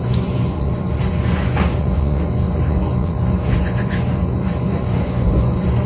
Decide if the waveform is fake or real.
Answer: fake